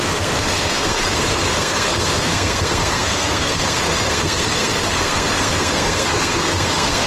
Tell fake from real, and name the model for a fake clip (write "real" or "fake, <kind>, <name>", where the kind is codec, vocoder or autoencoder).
fake, codec, SNAC